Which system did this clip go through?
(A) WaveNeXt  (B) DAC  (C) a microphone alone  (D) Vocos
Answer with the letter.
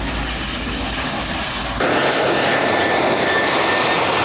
C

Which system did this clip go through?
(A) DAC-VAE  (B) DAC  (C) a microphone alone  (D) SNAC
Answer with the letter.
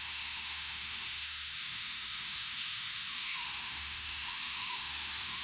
A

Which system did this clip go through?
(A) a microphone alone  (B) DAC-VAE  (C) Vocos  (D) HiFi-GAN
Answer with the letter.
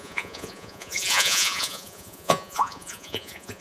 C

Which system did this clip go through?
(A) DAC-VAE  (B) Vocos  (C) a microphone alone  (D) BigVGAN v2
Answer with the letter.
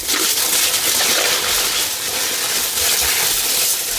C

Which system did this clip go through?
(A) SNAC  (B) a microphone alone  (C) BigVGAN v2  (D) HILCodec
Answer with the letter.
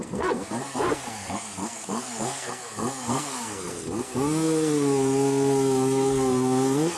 A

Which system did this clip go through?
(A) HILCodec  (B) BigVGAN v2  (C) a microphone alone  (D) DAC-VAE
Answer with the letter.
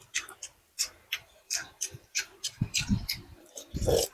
B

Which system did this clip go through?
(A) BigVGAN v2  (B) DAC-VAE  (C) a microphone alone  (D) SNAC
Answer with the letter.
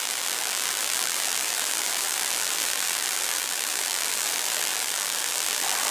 A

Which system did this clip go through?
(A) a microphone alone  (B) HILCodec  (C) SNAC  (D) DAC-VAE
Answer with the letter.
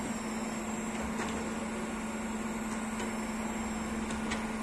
A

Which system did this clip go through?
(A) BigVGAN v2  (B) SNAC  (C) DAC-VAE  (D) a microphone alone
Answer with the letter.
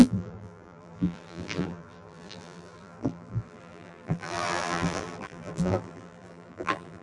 A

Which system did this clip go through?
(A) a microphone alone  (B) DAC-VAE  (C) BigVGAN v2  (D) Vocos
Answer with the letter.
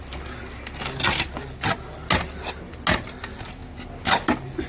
A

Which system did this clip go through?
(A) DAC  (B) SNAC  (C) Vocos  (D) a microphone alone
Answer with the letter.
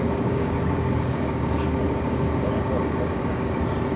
A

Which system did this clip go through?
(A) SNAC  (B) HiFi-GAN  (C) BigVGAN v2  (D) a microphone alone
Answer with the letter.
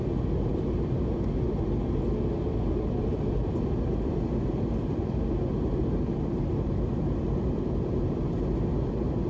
D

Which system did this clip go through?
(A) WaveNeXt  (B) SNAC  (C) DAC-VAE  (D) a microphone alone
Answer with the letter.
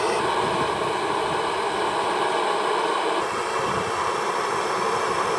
D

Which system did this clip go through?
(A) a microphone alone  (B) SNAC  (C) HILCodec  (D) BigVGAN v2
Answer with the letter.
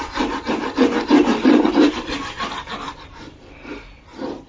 D